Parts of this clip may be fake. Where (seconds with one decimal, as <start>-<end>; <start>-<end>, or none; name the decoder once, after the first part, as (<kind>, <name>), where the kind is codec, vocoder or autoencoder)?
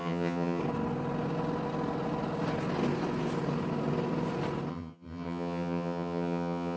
0.0-0.6 (vocoder, HiFi-GAN); 4.7-6.8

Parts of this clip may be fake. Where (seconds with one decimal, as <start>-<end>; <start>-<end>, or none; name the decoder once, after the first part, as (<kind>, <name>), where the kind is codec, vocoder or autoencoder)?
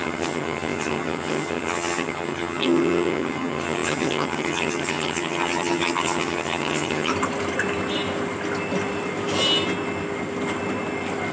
0.0-7.1 (vocoder, HiFi-GAN)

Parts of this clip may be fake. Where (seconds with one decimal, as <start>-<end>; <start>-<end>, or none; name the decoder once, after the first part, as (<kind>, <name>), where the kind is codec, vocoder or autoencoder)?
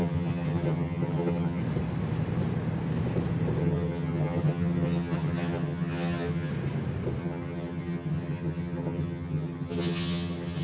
0.0-1.6 (vocoder, HiFi-GAN); 3.6-6.5; 7.2-10.6